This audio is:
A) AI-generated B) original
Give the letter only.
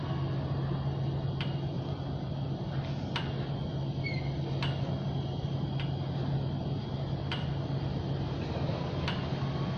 B